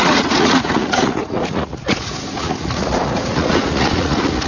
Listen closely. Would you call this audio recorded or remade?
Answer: remade